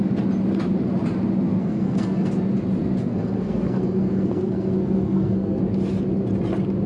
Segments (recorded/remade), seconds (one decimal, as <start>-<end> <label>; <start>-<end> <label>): 0.0-1.6 recorded; 1.6-2.3 remade; 2.3-3.0 recorded; 3.0-5.6 remade; 5.6-6.9 recorded

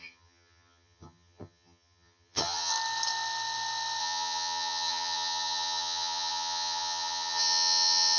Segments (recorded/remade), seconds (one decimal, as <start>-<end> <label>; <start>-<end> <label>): 0.0-2.7 remade; 2.7-4.0 recorded; 4.0-8.2 remade

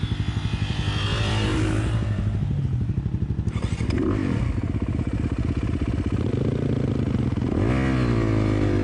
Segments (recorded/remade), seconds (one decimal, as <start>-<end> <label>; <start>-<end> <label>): 0.0-1.5 recorded; 1.5-2.6 remade; 2.6-8.8 recorded

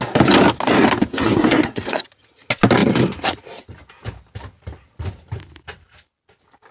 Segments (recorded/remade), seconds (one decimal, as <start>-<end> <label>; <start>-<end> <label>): 0.0-1.1 recorded; 1.1-2.0 remade; 2.0-6.7 recorded

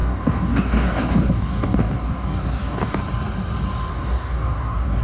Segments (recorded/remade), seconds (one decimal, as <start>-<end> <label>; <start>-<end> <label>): 0.0-3.0 remade; 3.0-3.9 recorded; 3.9-5.0 remade

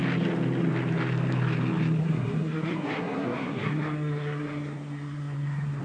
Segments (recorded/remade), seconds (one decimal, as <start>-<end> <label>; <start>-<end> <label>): 0.0-2.0 recorded; 2.0-5.8 remade